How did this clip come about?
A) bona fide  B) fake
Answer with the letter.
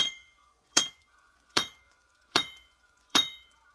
B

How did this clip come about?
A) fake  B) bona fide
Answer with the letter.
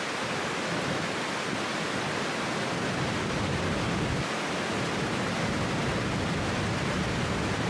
B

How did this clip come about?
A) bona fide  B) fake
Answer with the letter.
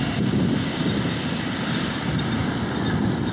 A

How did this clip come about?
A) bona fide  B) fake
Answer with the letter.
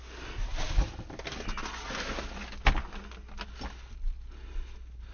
A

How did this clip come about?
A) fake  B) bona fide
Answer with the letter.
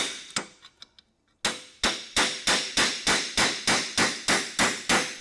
B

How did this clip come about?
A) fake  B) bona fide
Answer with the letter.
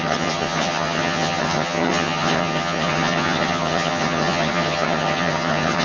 A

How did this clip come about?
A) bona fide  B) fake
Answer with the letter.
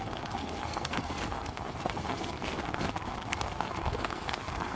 B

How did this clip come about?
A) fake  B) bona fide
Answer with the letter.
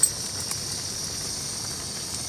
B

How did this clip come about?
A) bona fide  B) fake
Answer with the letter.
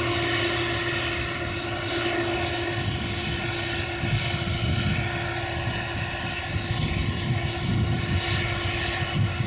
A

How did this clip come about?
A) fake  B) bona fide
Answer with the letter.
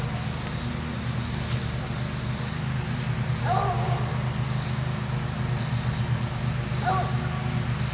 B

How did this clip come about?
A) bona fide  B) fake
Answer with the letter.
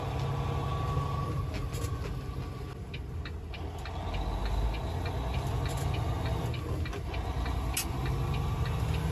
A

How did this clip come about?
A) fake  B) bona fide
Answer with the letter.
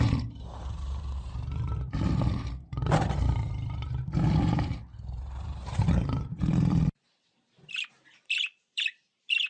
A